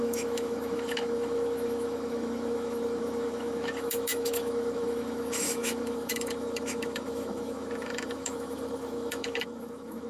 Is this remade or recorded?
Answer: remade